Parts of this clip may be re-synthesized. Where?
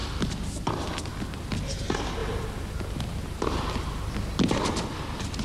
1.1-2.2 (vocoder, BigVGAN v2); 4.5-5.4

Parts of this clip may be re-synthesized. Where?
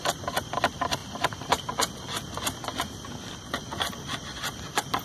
none